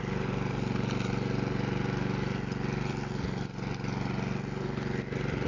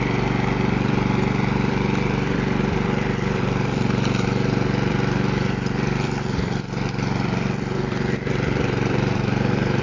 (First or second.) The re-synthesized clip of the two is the second